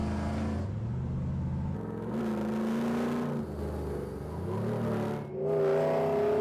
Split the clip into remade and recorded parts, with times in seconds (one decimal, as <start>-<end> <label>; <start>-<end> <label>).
0.0-6.4 recorded